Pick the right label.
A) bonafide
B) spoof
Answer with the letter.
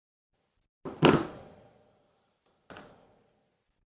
A